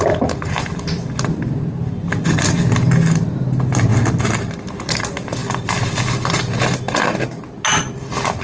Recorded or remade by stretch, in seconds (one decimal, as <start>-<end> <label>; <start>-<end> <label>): 0.0-8.4 recorded